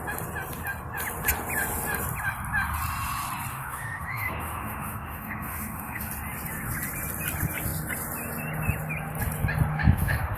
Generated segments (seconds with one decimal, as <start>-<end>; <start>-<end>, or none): 3.5-6.1; 9.7-10.4